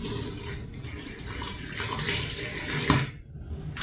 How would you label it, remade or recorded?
recorded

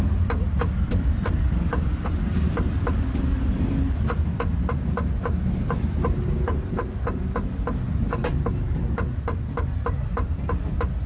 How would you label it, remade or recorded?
recorded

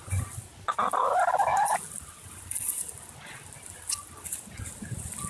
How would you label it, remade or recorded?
recorded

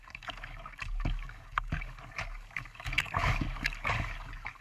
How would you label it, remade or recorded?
remade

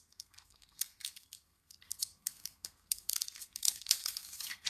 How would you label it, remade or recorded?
remade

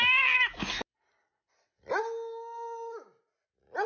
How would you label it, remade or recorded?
recorded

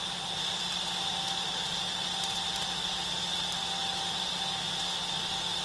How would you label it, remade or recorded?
recorded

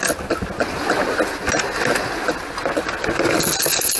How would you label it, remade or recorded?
recorded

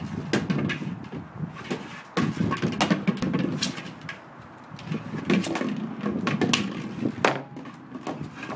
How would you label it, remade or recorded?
recorded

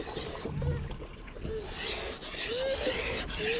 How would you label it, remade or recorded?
recorded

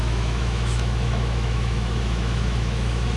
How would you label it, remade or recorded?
remade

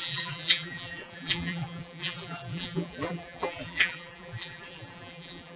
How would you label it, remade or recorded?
remade